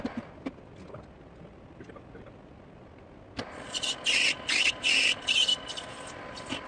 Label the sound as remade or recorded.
recorded